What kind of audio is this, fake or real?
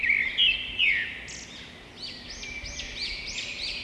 real